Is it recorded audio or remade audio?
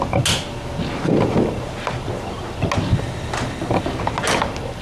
recorded